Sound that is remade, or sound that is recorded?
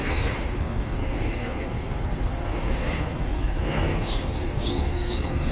remade